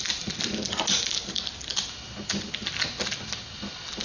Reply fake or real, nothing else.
real